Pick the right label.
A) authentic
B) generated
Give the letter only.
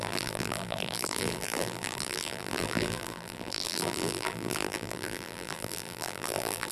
B